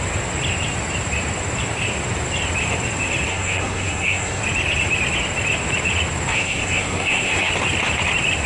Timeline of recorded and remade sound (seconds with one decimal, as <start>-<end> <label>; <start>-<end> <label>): 0.0-3.3 recorded; 3.3-4.4 remade; 4.4-6.3 recorded; 6.3-7.5 remade; 7.5-8.5 recorded